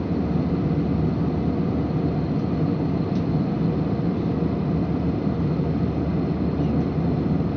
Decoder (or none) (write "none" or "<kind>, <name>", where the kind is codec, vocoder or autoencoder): none